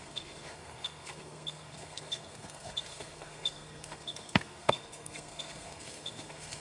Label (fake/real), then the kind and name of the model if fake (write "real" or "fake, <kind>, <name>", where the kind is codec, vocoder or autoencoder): fake, codec, SNAC